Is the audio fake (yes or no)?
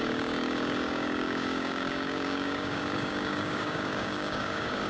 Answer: yes